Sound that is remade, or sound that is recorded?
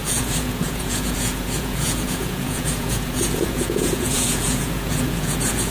remade